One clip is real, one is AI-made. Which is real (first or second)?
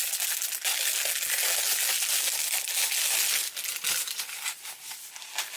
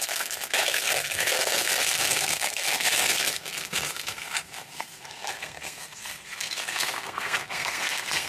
first